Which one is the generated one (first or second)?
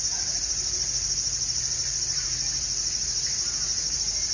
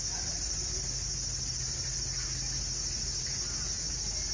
first